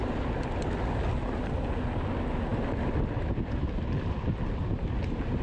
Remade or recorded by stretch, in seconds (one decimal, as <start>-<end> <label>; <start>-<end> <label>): 0.0-5.4 recorded